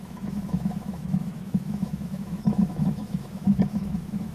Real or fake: fake